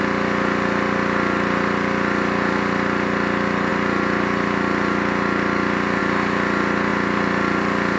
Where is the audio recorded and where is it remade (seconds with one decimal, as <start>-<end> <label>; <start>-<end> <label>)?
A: 0.0-8.0 recorded